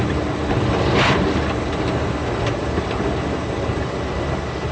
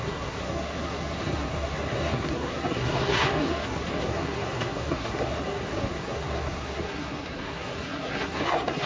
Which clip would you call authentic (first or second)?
first